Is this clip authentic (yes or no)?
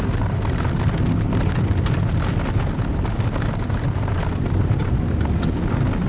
yes